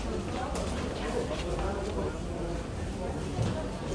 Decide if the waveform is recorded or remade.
recorded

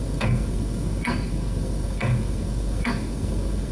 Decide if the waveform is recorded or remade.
remade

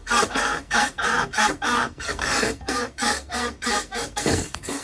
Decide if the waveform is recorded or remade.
remade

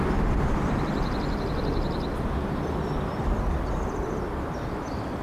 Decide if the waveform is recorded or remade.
recorded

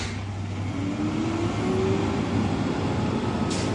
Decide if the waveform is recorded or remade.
recorded